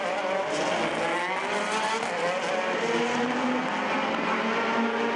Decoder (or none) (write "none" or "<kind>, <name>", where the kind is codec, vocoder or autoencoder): none